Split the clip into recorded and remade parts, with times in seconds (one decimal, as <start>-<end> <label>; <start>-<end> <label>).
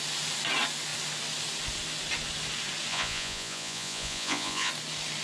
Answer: 0.0-2.9 recorded; 2.9-4.7 remade; 4.7-5.2 recorded